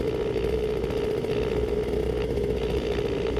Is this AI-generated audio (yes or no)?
no